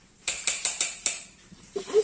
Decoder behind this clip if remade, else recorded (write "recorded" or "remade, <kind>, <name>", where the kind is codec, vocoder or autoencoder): recorded